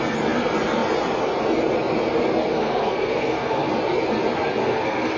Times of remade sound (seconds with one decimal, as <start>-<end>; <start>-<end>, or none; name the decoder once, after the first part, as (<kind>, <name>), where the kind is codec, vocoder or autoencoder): 2.5-3.7 (codec, SNAC); 4.6-5.2